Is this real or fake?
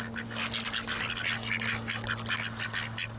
real